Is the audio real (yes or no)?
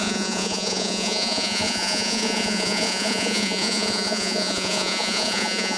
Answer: no